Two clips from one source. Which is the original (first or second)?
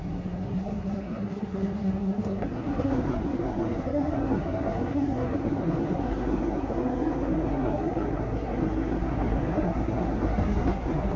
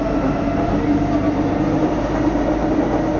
second